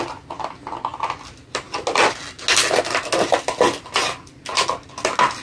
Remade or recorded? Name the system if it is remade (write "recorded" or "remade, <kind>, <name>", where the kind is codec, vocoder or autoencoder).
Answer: recorded